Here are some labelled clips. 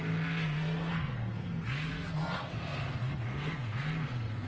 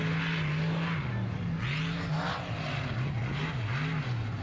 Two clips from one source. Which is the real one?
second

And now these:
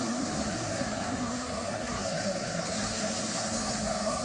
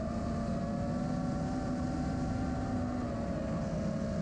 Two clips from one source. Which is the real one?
second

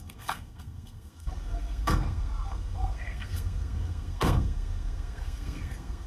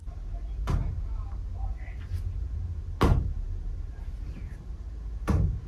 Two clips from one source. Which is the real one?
second